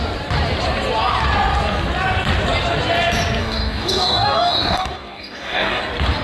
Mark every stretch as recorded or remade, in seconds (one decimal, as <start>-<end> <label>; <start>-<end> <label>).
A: 0.0-3.4 recorded; 3.4-5.8 remade; 5.8-6.2 recorded